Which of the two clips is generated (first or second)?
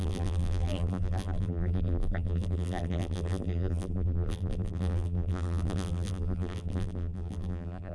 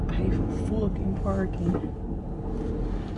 first